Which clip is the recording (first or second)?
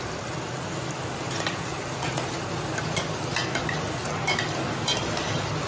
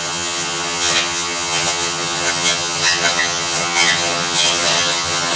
first